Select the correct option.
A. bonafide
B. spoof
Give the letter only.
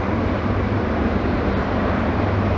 A